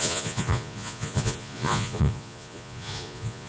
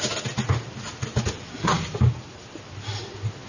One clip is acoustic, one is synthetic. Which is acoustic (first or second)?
second